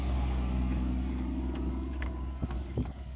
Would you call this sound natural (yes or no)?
no